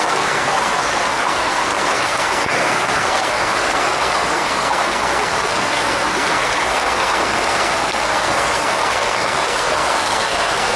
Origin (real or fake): fake